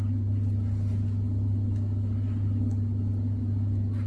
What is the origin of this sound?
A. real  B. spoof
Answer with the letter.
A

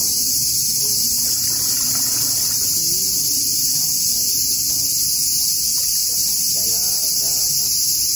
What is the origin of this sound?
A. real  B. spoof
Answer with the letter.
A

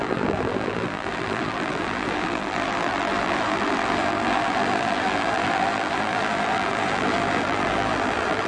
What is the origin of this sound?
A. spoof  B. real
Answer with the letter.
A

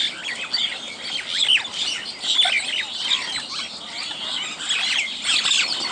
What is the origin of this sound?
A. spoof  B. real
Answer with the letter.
B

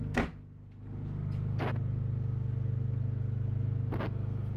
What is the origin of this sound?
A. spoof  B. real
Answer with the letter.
B